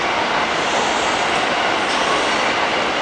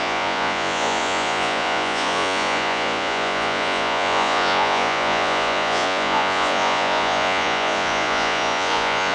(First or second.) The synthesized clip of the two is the second